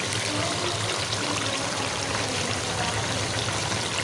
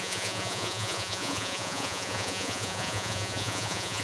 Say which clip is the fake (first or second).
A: second